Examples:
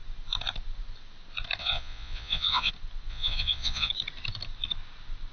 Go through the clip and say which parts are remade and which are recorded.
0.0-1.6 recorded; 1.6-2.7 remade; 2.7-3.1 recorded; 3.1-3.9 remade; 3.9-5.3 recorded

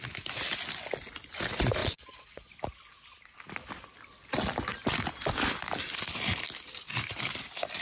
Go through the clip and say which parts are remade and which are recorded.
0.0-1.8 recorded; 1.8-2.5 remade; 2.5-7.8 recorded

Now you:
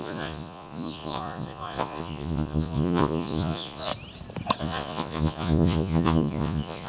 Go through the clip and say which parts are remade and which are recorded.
0.0-3.9 remade; 3.9-4.6 recorded; 4.6-6.9 remade

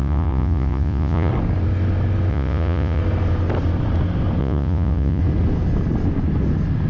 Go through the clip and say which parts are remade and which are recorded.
0.0-1.3 remade; 1.3-2.3 recorded; 2.3-3.0 remade; 3.0-4.4 recorded; 4.4-5.2 remade; 5.2-6.9 recorded

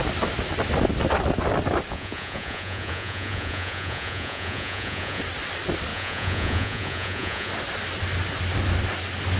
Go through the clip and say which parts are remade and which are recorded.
0.0-1.9 recorded; 1.9-5.2 remade; 5.2-5.9 recorded; 5.9-7.5 remade; 7.5-9.4 recorded

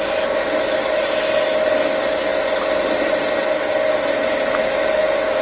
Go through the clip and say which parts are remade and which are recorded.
0.0-5.4 recorded

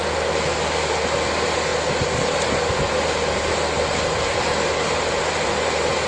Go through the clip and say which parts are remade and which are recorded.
0.0-6.1 recorded